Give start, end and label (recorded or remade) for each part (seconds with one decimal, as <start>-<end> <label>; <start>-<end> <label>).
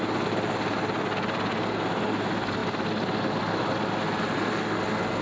0.0-5.2 recorded